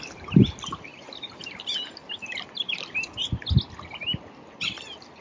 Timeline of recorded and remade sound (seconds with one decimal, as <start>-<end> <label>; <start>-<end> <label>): 0.0-5.2 recorded